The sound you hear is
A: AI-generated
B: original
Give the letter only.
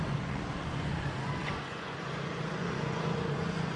A